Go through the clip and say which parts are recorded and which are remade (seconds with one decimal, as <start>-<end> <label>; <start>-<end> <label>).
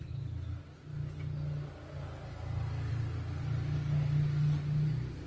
0.0-5.3 recorded